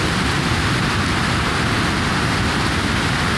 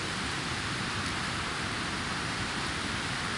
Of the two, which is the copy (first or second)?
second